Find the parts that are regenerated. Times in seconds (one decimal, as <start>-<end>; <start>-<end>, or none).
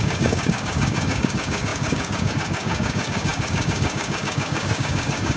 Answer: 0.0-5.4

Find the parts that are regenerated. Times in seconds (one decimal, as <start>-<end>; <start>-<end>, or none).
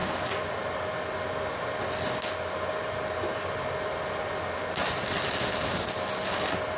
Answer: none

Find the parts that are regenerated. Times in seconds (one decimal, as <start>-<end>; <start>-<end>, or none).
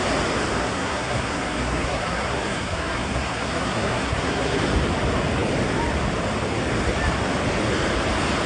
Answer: 0.6-4.6